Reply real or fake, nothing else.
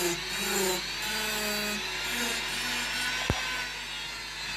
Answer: real